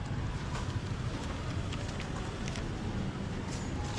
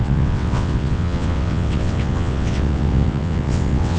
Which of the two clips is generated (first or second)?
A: second